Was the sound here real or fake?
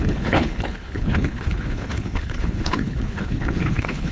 fake